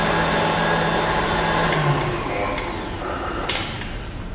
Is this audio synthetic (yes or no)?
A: no